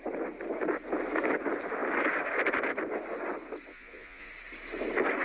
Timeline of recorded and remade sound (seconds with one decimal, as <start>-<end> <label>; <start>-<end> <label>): 0.0-3.7 recorded; 3.7-4.3 remade; 4.3-5.2 recorded